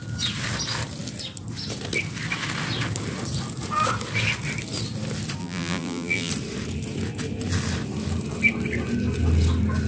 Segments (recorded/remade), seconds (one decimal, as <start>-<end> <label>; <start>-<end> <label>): 0.0-5.4 recorded; 5.4-6.3 remade; 6.3-9.9 recorded